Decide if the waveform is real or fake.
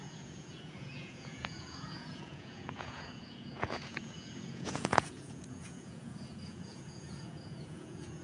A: fake